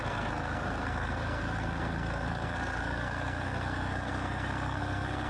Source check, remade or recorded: remade